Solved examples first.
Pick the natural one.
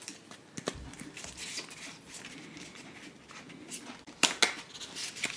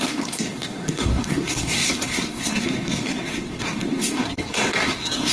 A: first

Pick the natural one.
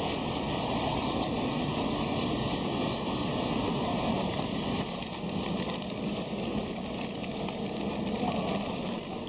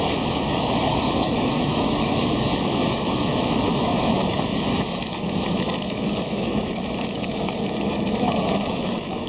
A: first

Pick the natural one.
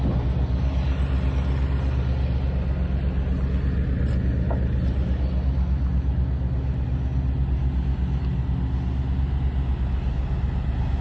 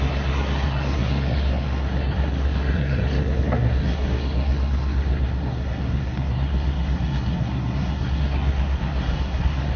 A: first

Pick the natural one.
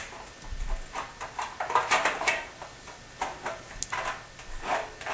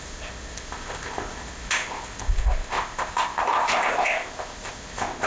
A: first